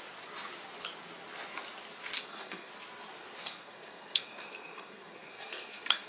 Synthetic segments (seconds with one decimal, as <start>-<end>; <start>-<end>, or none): 2.2-2.7; 3.4-6.1